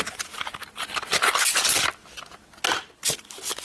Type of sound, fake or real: real